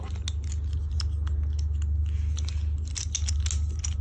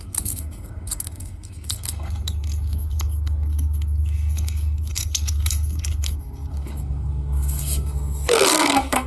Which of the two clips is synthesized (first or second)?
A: second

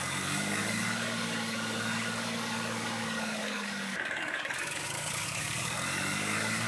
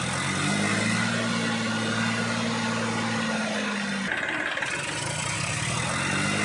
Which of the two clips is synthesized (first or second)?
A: first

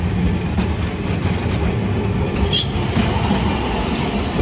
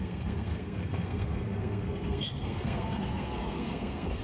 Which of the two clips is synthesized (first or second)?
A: second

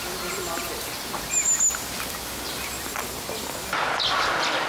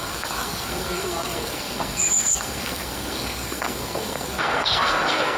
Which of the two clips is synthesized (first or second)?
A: second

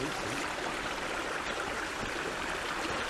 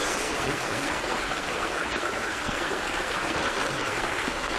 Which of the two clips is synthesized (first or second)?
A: second